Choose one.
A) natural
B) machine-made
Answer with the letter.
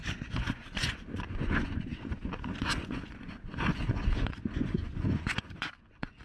B